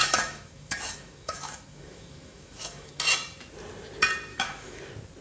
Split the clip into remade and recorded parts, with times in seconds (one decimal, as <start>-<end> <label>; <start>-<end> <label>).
0.0-3.0 remade; 3.0-4.3 recorded; 4.3-4.8 remade; 4.8-5.2 recorded